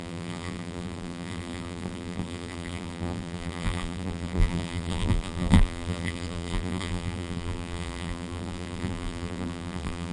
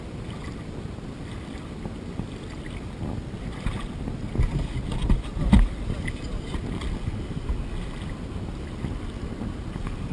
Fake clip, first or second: first